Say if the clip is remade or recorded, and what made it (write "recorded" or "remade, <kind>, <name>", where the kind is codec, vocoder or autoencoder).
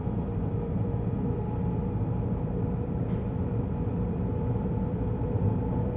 recorded